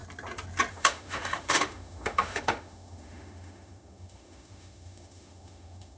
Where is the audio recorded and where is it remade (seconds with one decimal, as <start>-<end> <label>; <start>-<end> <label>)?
0.0-0.7 recorded; 0.7-6.0 remade

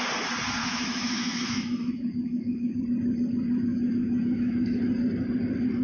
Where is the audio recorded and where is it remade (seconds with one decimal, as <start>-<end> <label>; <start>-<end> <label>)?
0.0-0.6 recorded; 0.6-2.8 remade; 2.8-3.7 recorded; 3.7-4.8 remade; 4.8-5.8 recorded

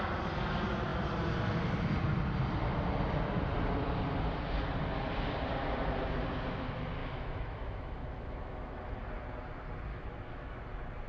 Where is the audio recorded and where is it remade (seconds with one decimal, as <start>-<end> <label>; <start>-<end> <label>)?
0.0-7.0 recorded; 7.0-8.9 remade; 8.9-9.9 recorded; 9.9-10.6 remade; 10.6-11.1 recorded

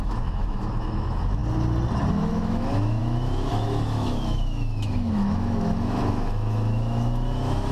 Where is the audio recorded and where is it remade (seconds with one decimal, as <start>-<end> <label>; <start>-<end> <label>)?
0.0-1.4 remade; 1.4-2.1 recorded; 2.1-7.7 remade

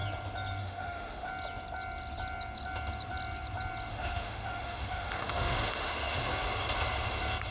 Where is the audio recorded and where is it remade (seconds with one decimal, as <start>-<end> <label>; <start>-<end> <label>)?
0.0-0.6 recorded; 0.6-1.3 remade; 1.3-3.9 recorded; 3.9-6.2 remade; 6.2-7.5 recorded

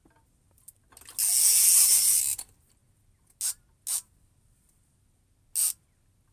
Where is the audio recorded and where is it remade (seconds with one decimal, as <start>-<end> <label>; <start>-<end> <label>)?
0.0-6.3 recorded